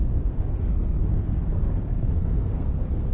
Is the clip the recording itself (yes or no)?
no